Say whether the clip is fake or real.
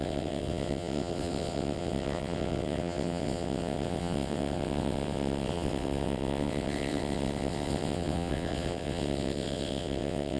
fake